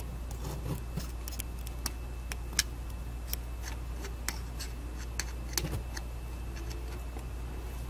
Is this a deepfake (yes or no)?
no